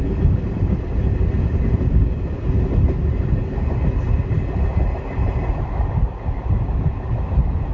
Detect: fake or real real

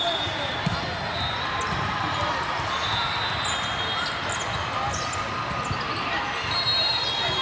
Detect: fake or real real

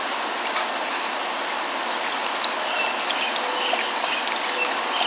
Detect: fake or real real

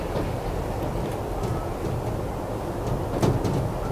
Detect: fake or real real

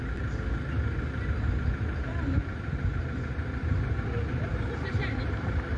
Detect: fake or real real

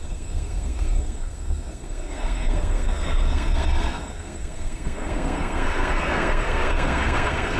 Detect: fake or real fake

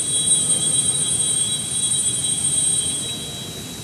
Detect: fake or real real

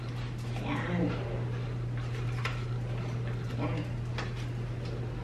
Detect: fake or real real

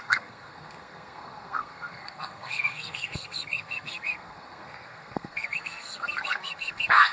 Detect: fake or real fake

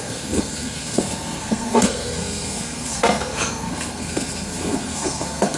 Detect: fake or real fake